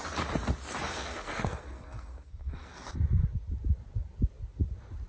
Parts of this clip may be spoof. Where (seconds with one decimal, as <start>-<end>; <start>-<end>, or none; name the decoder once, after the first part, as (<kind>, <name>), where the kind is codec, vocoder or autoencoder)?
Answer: 0.9-2.9 (codec, SNAC)